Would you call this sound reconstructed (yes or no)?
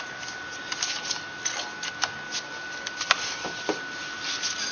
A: no